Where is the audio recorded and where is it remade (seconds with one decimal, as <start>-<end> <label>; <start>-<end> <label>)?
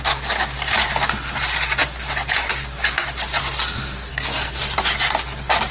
0.0-4.1 recorded; 4.1-4.6 remade; 4.6-5.7 recorded